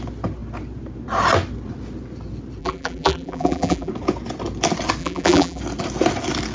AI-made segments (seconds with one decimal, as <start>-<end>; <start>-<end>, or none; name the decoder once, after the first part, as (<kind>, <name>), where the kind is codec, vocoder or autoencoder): 2.6-3.9 (vocoder, BigVGAN v2); 5.0-5.6